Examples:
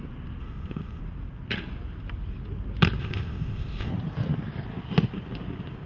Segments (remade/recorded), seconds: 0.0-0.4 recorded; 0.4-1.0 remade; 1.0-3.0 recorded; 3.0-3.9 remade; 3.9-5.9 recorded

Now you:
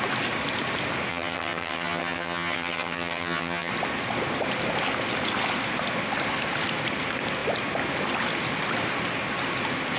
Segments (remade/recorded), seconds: 0.0-1.1 recorded; 1.1-3.7 remade; 3.7-10.0 recorded

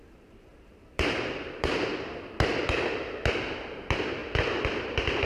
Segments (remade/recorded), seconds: 0.0-0.5 recorded; 0.5-1.8 remade; 1.8-5.3 recorded